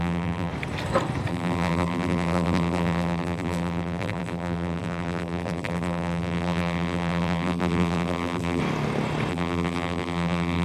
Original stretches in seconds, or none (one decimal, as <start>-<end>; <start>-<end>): 0.5-1.3; 8.6-9.3